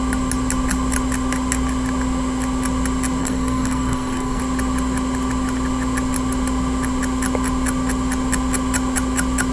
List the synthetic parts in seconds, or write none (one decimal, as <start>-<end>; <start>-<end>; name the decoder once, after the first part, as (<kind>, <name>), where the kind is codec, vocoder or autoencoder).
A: 3.2-4.4 (codec, SNAC)